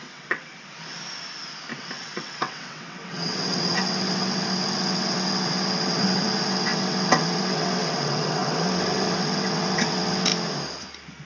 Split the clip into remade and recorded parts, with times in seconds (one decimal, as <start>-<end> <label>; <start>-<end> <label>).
0.0-0.5 remade; 0.5-1.8 recorded; 1.8-10.3 remade; 10.3-11.3 recorded